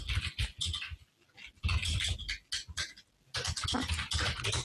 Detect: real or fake real